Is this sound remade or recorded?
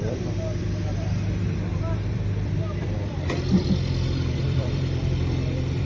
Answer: remade